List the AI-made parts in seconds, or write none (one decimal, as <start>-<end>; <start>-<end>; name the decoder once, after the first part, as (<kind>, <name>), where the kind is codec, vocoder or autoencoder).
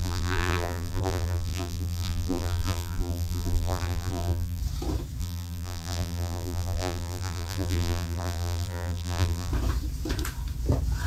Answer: 0.0-4.6 (vocoder, BigVGAN v2); 5.2-9.5